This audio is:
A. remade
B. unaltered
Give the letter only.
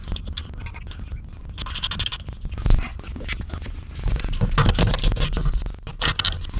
B